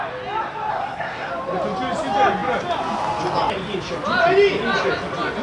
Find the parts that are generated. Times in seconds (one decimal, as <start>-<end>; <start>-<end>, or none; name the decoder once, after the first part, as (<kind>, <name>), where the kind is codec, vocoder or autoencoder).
0.7-1.3 (codec, SNAC)